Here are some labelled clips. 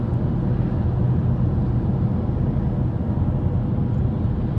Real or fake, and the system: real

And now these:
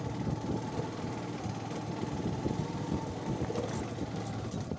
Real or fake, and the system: real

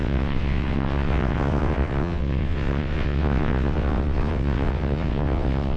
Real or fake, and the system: fake, vocoder, WaveNeXt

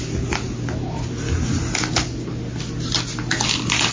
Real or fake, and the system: real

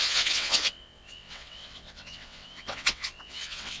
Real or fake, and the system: fake, vocoder, WaveNeXt